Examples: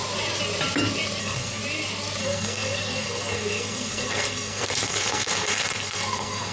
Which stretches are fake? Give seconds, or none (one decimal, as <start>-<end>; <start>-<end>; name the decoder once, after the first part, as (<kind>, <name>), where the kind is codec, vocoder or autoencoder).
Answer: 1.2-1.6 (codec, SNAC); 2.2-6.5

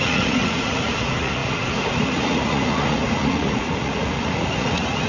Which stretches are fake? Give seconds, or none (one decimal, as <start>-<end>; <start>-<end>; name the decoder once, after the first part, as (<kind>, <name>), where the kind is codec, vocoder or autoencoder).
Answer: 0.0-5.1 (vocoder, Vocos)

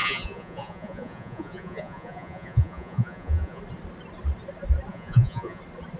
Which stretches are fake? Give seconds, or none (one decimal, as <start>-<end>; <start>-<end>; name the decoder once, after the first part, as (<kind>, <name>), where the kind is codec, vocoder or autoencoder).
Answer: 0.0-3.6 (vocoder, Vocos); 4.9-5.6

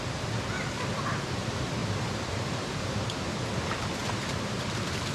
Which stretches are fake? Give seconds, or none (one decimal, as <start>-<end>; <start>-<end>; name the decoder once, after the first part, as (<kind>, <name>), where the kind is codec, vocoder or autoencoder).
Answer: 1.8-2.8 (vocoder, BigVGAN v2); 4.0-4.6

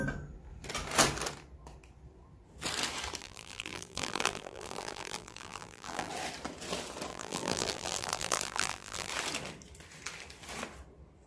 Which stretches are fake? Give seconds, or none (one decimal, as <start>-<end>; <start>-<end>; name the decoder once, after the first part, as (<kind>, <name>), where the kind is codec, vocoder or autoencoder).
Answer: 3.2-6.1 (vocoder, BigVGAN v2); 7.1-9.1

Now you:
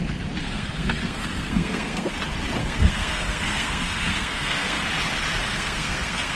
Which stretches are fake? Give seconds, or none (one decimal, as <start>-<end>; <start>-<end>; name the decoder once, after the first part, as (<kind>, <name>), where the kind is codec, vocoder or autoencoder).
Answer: 0.4-2.1 (codec, SNAC); 2.6-4.8; 5.4-6.4

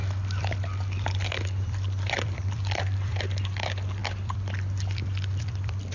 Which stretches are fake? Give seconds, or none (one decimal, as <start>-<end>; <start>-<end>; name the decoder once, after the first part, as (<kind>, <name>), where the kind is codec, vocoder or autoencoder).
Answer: 0.0-3.2 (vocoder, BigVGAN v2); 4.0-5.9